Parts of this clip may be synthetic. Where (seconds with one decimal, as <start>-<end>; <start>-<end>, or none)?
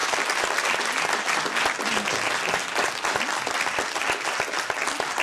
none